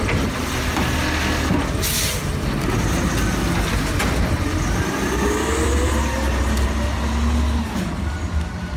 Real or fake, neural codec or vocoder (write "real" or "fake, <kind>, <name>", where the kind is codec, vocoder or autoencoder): real